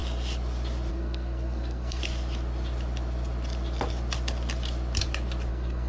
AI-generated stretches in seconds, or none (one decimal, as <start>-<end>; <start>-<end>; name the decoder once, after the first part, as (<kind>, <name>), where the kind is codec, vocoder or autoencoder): 0.9-2.0 (codec, SNAC); 5.5-5.9